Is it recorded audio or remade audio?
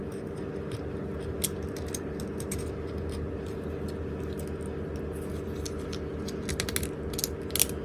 recorded